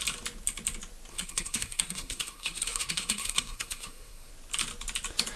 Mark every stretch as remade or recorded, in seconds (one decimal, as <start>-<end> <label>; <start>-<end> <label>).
0.0-1.1 recorded; 1.1-4.3 remade; 4.3-5.4 recorded